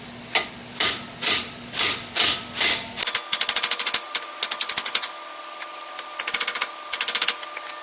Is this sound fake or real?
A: real